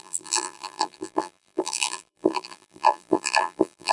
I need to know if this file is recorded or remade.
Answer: remade